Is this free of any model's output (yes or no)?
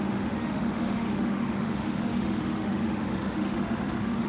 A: no